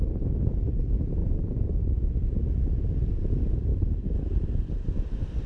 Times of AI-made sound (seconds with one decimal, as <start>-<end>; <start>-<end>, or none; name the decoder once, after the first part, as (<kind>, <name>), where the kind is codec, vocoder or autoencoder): 1.2-2.1 (vocoder, BigVGAN v2); 3.7-4.9